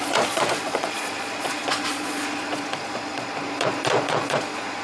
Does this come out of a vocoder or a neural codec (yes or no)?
yes